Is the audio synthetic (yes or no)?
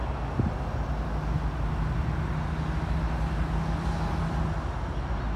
no